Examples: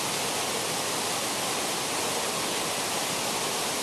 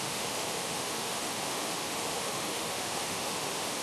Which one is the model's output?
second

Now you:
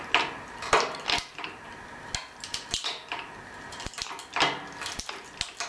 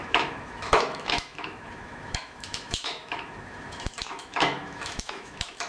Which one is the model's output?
second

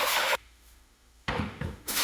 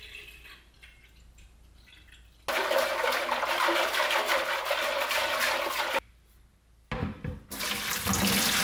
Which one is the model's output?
first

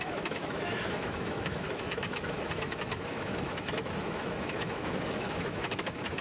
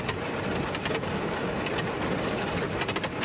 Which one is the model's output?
first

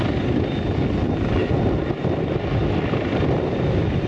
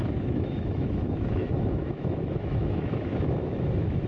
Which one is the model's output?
second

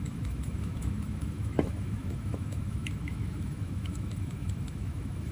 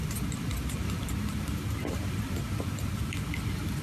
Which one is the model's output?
first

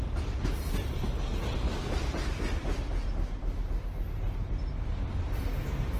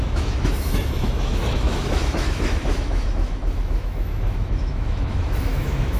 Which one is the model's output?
second